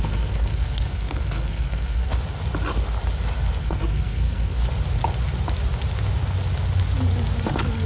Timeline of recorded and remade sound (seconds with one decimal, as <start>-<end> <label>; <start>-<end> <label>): 0.0-2.1 remade; 2.1-3.6 recorded; 3.6-4.6 remade; 4.6-7.5 recorded; 7.5-7.9 remade